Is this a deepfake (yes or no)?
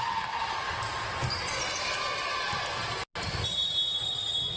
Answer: no